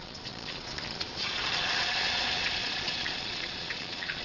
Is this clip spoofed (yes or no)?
yes